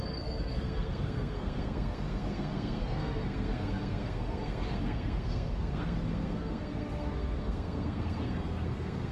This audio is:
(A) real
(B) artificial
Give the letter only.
B